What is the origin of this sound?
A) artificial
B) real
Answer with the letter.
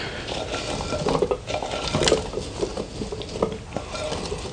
B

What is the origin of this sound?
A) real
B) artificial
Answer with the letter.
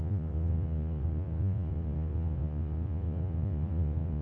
B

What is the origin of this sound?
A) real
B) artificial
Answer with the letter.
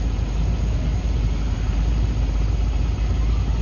A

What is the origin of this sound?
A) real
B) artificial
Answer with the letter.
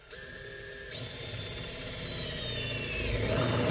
A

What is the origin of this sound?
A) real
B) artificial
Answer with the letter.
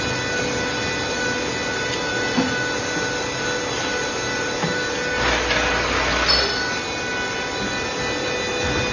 A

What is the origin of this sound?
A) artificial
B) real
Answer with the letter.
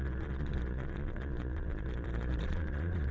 A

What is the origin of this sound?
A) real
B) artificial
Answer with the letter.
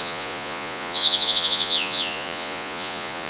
B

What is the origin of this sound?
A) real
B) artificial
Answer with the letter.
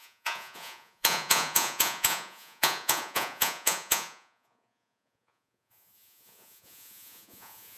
B